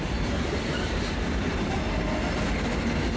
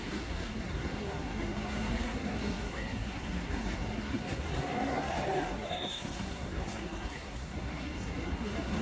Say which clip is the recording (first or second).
first